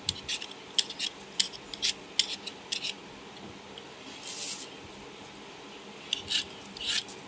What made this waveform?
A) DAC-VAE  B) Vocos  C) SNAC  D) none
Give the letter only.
D